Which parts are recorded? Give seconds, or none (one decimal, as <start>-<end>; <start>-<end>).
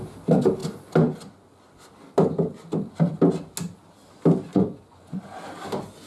0.0-4.5; 5.2-6.1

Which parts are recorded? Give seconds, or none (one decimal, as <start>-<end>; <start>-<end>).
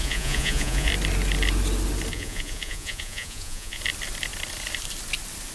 0.9-2.1; 3.8-5.5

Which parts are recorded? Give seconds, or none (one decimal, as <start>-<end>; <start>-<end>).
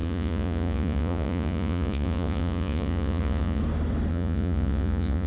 3.6-4.1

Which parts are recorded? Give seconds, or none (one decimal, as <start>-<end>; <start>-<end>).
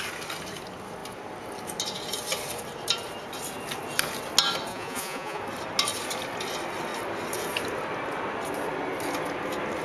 0.0-4.7; 5.4-9.8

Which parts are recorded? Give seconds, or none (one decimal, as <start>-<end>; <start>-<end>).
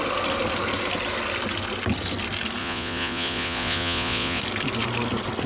0.0-2.6; 4.4-5.5